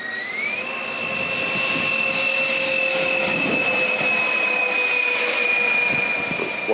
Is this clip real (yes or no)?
yes